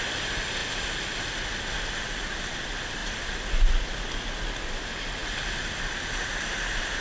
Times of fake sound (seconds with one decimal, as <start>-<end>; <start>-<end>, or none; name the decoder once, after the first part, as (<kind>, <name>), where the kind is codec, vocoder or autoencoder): none